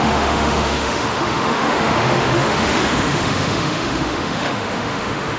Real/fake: fake